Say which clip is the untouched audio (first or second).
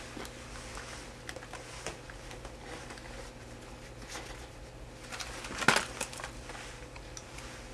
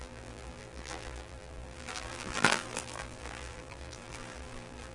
first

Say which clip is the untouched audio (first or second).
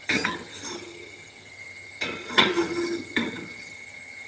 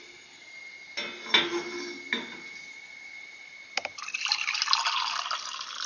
second